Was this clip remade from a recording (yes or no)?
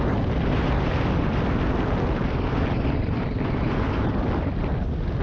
no